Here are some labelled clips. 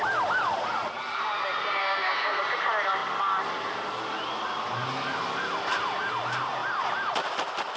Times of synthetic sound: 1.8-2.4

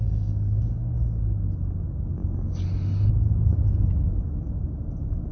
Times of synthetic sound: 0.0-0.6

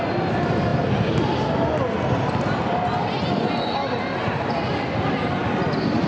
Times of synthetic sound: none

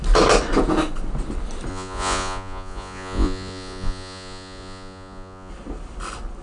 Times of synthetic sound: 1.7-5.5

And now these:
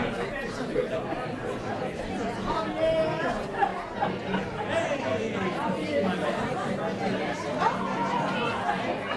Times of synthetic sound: 1.4-2.0; 5.1-6.0

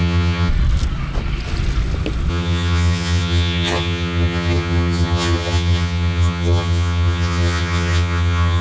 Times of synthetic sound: 0.0-0.5; 2.3-8.6

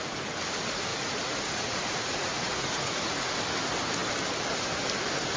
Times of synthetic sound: 0.9-3.2